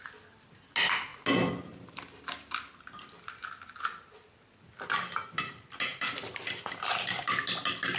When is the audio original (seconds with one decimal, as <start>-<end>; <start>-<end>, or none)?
0.0-8.0